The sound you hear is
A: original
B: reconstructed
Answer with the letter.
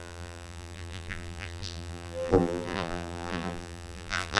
B